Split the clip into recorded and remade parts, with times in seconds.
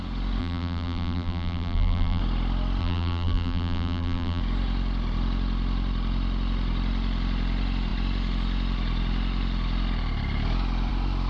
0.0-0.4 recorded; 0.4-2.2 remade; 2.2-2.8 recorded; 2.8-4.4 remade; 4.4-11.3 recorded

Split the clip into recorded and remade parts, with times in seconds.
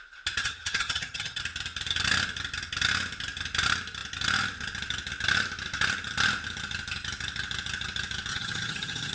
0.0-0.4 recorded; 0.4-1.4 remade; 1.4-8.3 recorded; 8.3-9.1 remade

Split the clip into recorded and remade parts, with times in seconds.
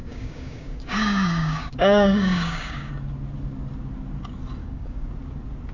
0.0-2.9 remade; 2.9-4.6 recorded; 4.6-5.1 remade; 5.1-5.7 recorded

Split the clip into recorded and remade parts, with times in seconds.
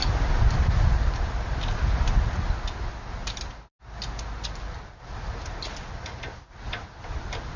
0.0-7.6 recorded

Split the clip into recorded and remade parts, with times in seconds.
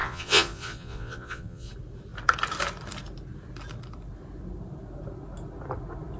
0.0-1.7 remade; 1.7-6.2 recorded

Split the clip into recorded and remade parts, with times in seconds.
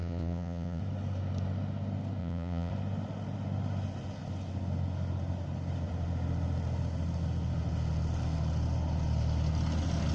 0.0-0.8 remade; 0.8-2.2 recorded; 2.2-2.7 remade; 2.7-10.1 recorded